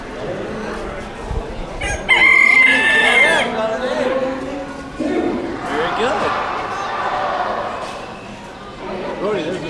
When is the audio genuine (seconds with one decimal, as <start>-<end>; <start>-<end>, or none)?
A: 0.0-9.7